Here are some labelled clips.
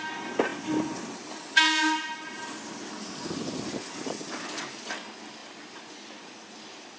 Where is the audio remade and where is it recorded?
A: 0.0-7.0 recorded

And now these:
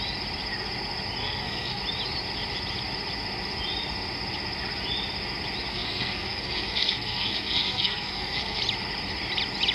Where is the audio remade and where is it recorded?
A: 0.0-1.2 recorded; 1.2-1.8 remade; 1.8-5.7 recorded; 5.7-8.6 remade; 8.6-9.7 recorded

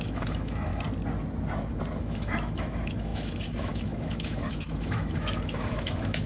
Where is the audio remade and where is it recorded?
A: 0.0-0.7 remade; 0.7-2.0 recorded; 2.0-6.3 remade

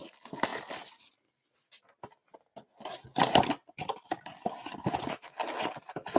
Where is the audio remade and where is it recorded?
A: 0.0-6.2 recorded

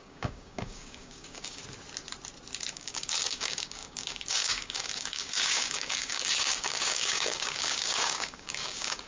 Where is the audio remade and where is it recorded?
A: 0.0-1.6 remade; 1.6-2.7 recorded; 2.7-9.1 remade

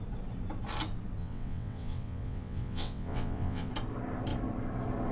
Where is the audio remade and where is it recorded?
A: 0.0-1.2 recorded; 1.2-3.7 remade; 3.7-5.1 recorded

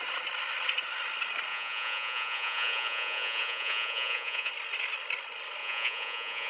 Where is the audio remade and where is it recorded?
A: 0.0-1.5 recorded; 1.5-4.5 remade; 4.5-5.6 recorded; 5.6-6.5 remade